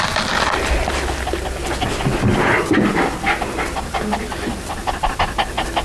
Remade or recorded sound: recorded